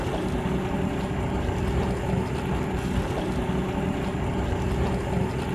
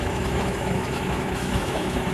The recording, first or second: first